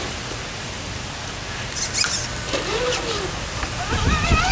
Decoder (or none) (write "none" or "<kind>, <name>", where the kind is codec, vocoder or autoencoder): none